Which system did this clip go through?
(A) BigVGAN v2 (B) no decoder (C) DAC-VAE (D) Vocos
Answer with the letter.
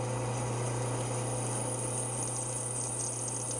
B